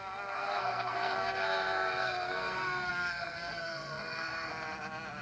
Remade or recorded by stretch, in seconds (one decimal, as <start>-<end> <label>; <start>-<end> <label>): 0.0-4.5 remade; 4.5-5.2 recorded